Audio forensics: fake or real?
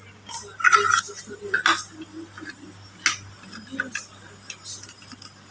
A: real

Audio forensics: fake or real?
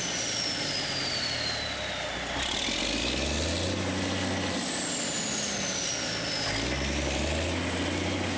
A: real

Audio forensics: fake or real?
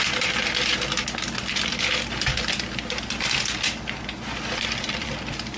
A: real